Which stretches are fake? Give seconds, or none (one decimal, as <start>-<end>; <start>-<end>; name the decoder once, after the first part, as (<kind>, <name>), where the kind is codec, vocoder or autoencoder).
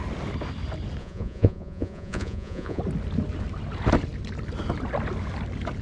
1.0-2.8 (vocoder, Vocos)